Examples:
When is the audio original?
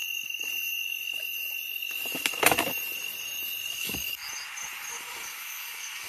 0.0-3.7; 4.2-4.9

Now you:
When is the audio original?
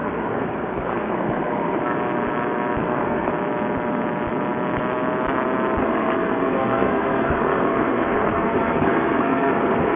1.8-2.8; 3.3-5.8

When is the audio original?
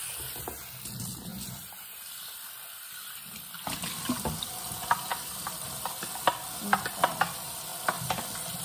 0.0-1.3; 4.4-5.1; 7.1-7.7